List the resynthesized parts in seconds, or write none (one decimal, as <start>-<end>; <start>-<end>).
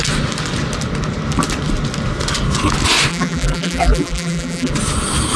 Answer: 3.1-4.7